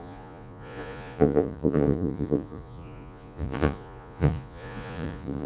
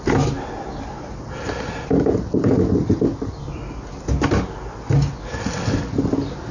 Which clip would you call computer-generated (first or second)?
first